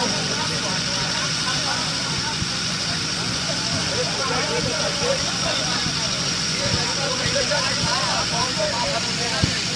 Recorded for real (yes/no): no